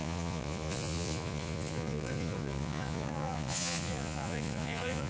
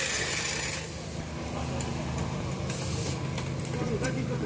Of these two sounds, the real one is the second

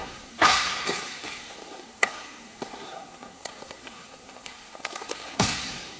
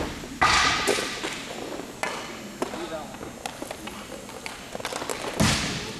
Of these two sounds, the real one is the second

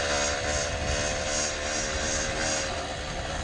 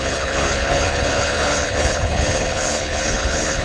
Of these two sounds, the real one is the first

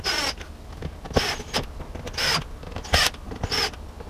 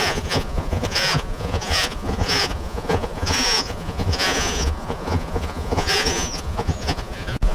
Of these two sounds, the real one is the first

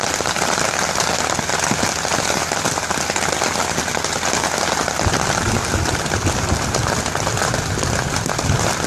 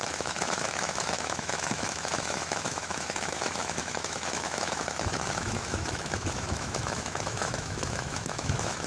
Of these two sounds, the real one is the first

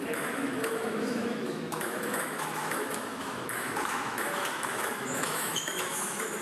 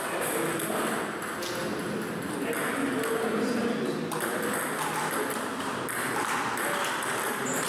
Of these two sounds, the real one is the second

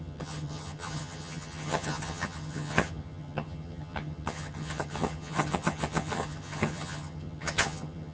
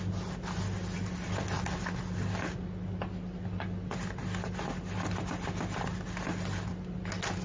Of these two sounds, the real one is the second